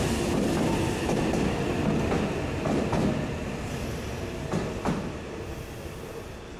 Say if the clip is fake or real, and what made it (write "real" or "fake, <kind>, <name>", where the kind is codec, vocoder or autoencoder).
real